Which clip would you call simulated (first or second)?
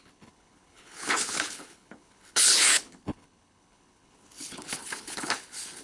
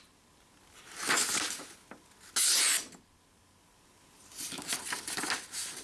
first